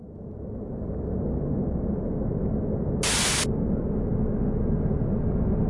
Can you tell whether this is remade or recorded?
recorded